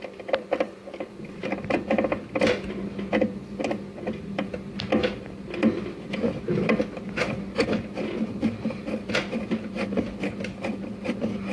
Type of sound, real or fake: real